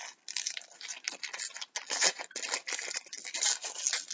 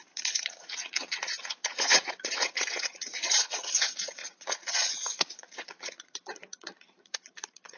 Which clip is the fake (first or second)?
second